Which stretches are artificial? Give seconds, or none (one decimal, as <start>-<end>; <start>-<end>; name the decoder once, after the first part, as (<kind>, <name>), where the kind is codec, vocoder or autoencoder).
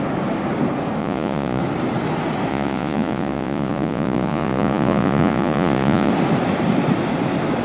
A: 1.0-1.6 (vocoder, Vocos); 2.5-6.1